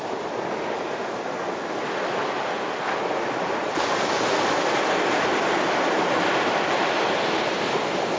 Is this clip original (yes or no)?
yes